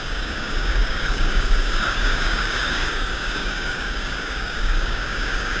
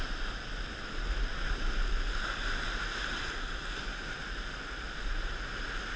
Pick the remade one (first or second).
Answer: first